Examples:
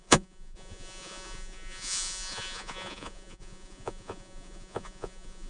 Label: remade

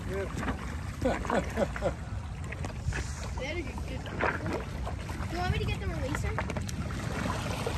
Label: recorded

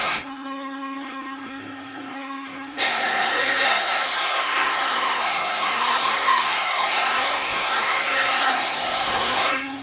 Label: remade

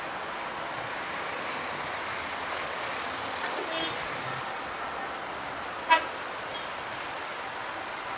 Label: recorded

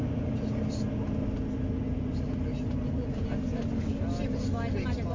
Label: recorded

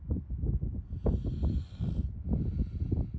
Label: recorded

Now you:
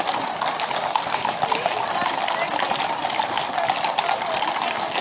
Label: recorded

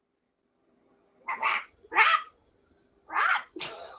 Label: recorded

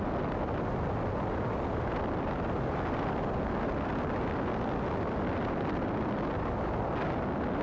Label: recorded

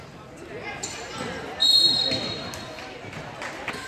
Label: recorded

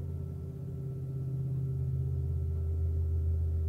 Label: recorded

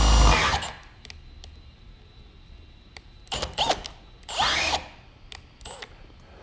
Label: recorded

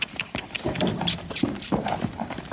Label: remade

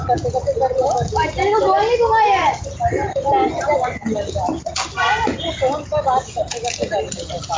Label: recorded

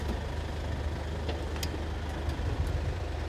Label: recorded